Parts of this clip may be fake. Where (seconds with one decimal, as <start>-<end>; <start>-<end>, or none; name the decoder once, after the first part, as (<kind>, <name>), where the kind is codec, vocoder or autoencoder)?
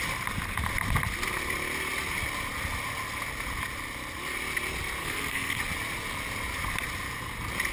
5.0-5.6 (codec, SNAC)